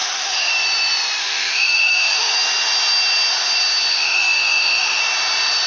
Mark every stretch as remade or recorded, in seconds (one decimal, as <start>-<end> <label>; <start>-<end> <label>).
0.0-0.5 remade; 0.5-1.2 recorded; 1.2-2.3 remade; 2.3-3.9 recorded; 3.9-5.0 remade; 5.0-5.7 recorded